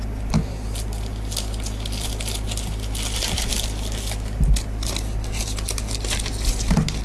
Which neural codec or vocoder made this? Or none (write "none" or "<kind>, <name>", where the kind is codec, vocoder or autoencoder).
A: none